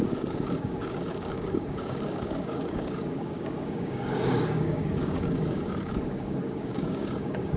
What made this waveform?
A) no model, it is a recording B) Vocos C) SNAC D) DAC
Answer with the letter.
D